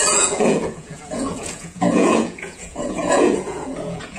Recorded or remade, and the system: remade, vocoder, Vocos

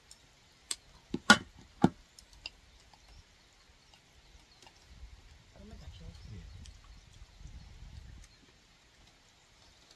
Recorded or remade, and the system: recorded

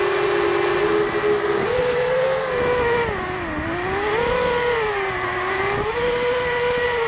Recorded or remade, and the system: recorded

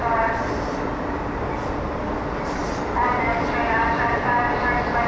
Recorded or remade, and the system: recorded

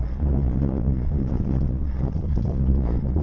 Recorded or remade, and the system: remade, vocoder, Vocos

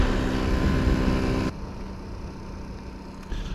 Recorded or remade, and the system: recorded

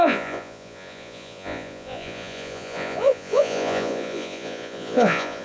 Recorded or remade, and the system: remade, vocoder, Vocos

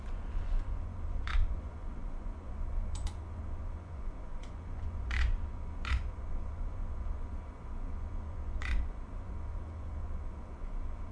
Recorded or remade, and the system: remade, vocoder, Vocos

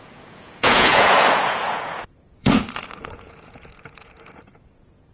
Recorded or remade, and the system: remade, vocoder, Vocos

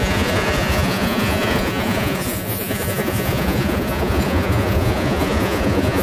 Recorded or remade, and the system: remade, vocoder, Vocos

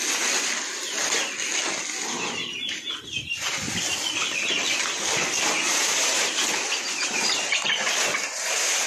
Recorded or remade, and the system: recorded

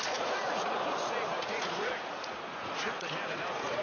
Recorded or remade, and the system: remade, vocoder, Vocos